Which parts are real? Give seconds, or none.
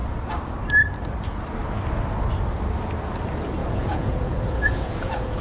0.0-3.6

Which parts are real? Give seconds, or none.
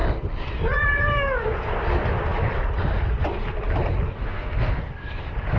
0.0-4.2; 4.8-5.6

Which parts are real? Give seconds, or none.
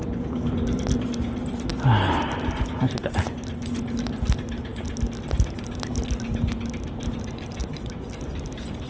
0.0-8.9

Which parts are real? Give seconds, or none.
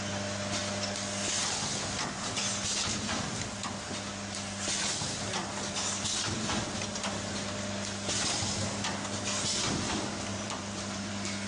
0.0-10.3; 11.1-11.5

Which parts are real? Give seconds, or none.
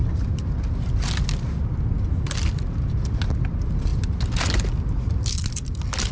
0.0-6.1